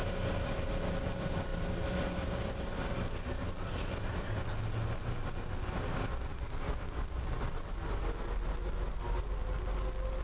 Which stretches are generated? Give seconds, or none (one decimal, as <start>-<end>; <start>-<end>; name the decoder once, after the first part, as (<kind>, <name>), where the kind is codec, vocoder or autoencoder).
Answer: none

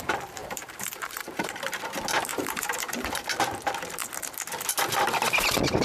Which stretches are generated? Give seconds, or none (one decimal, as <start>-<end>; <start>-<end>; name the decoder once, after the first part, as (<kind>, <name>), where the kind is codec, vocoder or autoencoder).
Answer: 0.4-1.9 (vocoder, BigVGAN v2); 2.3-3.1

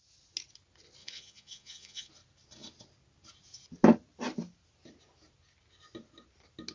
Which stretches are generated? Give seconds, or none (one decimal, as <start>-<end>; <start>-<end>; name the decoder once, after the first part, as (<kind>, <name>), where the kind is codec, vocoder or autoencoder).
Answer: 1.0-2.1 (vocoder, Vocos)

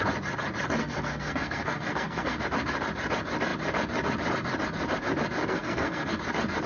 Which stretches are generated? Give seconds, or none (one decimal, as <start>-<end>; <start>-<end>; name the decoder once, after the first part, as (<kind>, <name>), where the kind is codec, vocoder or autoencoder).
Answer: 0.8-2.4 (codec, SNAC); 5.4-6.1

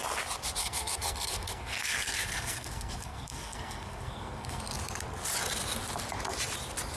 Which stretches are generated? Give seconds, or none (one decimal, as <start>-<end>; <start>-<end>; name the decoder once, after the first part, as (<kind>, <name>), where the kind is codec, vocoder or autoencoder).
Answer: 0.6-4.6 (codec, SNAC)

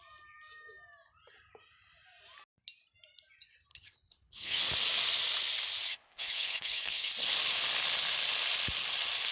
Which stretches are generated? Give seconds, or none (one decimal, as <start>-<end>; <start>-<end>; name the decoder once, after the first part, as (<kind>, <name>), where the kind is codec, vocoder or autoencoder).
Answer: 3.7-4.6 (codec, HILCodec); 5.9-7.1

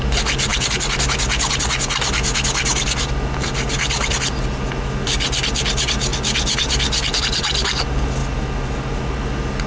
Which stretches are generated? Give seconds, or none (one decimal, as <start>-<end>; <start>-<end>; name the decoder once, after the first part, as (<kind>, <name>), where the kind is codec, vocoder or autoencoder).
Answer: none